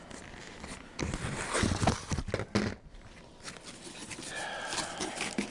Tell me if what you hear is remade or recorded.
recorded